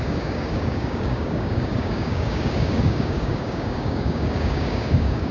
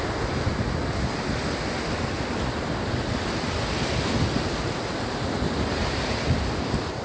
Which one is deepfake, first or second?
first